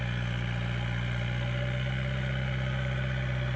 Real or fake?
real